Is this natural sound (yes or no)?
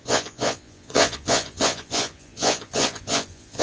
no